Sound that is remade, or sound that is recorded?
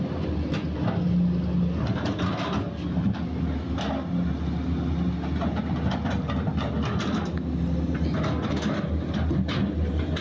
recorded